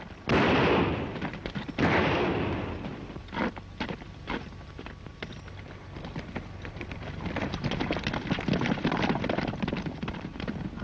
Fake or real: fake